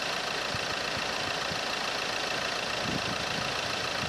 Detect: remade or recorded recorded